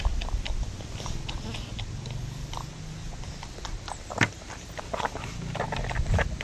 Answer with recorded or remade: recorded